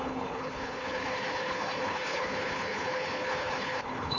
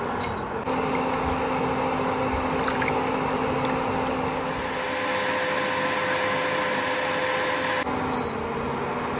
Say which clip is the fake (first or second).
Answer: first